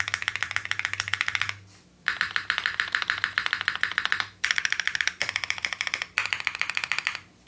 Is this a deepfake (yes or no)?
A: yes